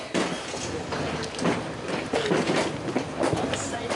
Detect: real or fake real